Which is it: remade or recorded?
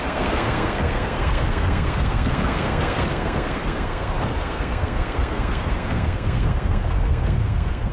remade